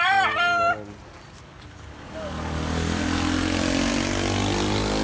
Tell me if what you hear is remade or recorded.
recorded